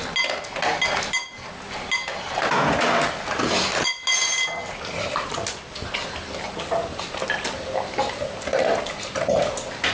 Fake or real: real